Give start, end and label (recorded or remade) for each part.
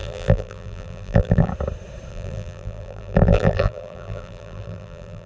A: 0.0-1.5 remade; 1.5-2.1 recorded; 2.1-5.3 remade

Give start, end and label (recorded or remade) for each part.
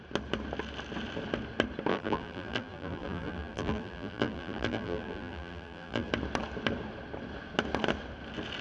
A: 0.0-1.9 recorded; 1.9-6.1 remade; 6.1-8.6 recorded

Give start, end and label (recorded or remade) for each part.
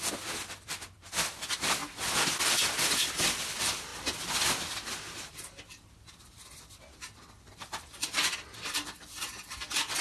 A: 0.0-1.8 remade; 1.8-2.4 recorded; 2.4-3.9 remade; 3.9-5.3 recorded; 5.3-10.0 remade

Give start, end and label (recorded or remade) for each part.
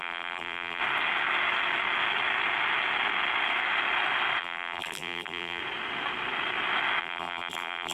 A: 0.0-0.8 remade; 0.8-4.4 recorded; 4.4-5.6 remade; 5.6-7.0 recorded; 7.0-7.9 remade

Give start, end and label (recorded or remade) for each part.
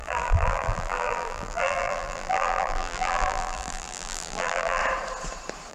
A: 0.0-4.8 remade; 4.8-5.7 recorded